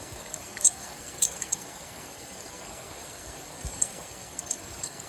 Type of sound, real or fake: fake